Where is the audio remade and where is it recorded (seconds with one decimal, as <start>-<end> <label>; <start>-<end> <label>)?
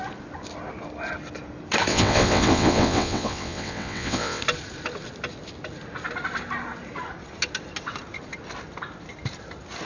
0.0-1.9 recorded; 1.9-4.4 remade; 4.4-9.8 recorded